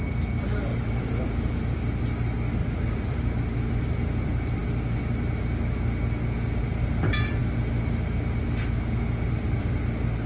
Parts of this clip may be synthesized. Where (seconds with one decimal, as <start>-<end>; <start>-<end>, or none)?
0.7-1.3; 2.6-3.4